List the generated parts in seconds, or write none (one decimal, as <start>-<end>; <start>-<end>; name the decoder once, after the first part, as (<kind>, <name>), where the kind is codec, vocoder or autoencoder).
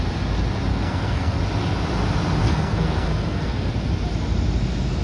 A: 0.7-1.4 (codec, SNAC); 2.4-3.7